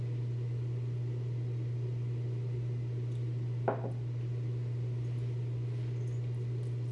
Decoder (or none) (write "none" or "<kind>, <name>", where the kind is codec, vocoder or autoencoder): none